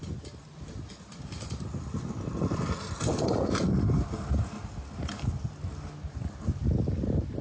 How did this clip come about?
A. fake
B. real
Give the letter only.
B